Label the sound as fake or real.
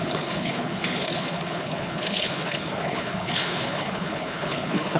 fake